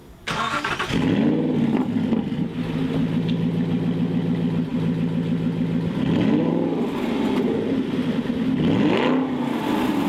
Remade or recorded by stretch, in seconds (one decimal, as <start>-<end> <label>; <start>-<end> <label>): 0.0-0.7 remade; 0.7-10.1 recorded